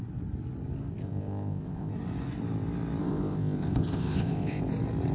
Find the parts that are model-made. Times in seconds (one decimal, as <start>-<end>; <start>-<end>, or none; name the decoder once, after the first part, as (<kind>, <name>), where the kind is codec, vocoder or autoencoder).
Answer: 1.0-1.9 (codec, ZipCodec); 3.0-4.6